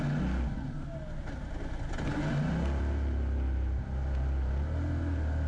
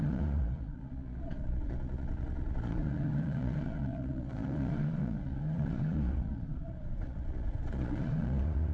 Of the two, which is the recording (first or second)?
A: first